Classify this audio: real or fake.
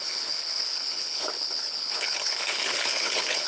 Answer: fake